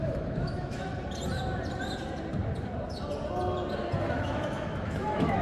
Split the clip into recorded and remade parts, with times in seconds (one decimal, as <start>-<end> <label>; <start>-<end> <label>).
0.0-0.9 remade; 0.9-4.1 recorded; 4.1-5.4 remade